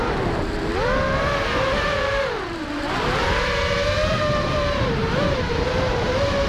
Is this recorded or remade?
remade